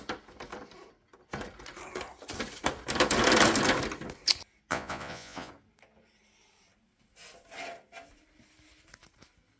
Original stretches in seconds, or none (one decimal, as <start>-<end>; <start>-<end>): 0.0-4.7; 5.5-9.6